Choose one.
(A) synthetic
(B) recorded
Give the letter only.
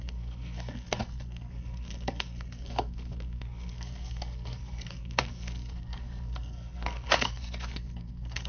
A